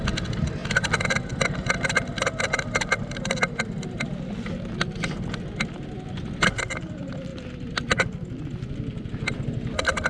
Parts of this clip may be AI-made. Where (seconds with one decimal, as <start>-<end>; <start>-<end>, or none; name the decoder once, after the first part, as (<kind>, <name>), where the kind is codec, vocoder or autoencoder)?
none